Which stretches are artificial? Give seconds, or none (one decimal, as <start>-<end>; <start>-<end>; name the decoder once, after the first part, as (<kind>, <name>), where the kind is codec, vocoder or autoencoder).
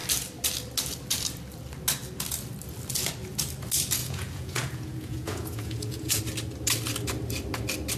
4.0-6.2 (vocoder, Vocos)